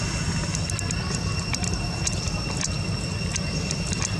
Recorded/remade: recorded